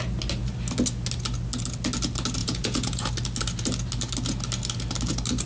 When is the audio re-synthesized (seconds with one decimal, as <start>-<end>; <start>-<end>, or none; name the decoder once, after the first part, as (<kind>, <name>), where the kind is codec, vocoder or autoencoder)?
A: 2.4-3.1 (vocoder, Vocos)